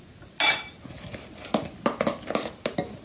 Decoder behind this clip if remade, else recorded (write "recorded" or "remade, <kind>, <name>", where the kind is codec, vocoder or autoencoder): recorded